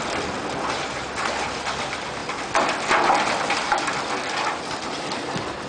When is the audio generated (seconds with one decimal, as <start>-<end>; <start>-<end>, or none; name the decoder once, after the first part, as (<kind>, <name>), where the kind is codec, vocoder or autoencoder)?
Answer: none